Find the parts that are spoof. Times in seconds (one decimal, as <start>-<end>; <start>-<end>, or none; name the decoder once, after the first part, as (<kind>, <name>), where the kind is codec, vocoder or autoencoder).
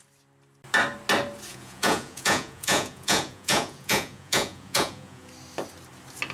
1.5-5.3 (vocoder, Vocos)